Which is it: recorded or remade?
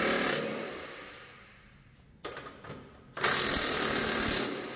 remade